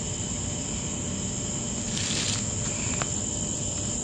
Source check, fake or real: real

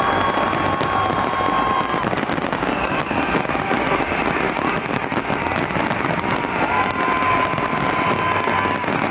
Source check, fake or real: real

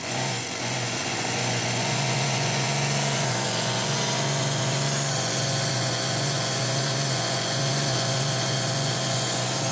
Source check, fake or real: fake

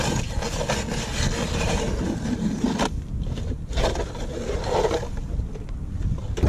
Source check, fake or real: real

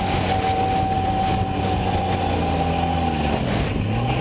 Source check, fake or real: real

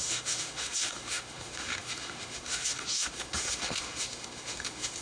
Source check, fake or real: fake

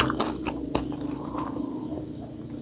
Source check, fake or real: real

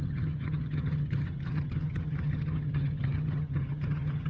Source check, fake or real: fake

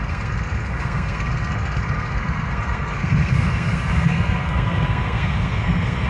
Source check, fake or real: fake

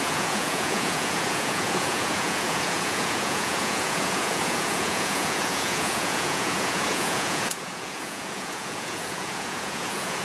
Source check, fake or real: fake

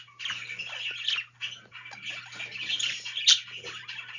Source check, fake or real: real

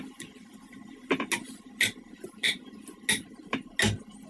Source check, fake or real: real